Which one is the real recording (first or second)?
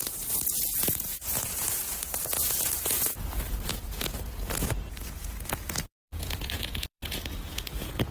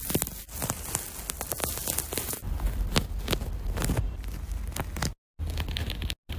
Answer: second